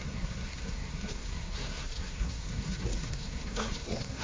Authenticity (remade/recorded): remade